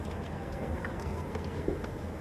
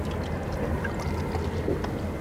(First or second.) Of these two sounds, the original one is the second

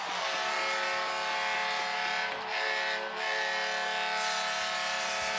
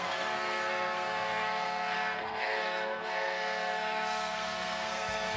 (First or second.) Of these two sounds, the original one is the first